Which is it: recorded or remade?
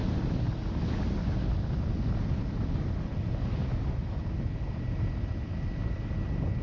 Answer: recorded